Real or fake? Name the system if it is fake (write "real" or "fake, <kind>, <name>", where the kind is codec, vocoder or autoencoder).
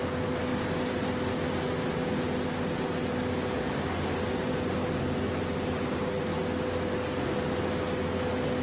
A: real